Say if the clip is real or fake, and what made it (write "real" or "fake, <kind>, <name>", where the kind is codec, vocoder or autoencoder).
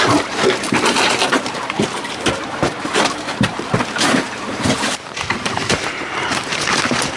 fake, vocoder, BigVGAN v2